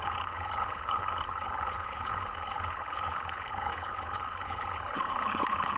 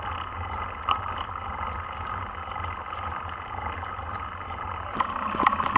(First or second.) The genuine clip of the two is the second